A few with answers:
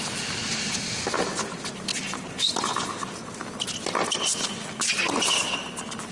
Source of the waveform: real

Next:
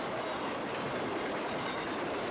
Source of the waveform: real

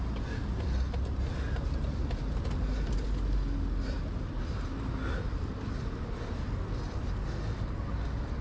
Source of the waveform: real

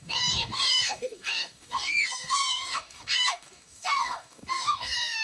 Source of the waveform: fake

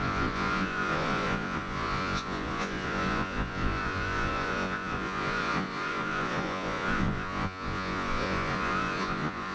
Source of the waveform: fake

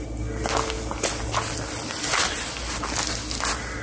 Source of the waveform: real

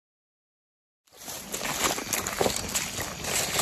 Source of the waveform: real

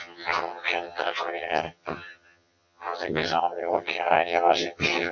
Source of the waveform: fake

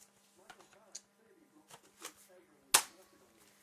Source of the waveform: real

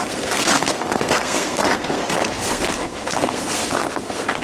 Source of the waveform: fake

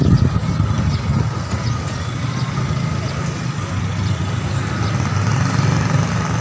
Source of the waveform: real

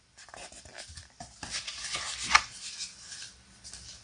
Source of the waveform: real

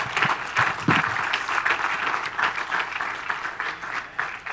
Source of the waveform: real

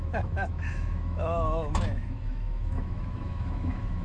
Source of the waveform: fake